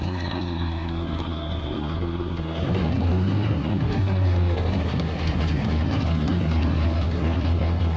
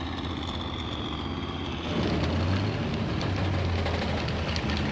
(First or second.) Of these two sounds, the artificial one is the first